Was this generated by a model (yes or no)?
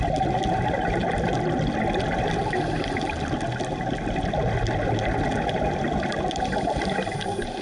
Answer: no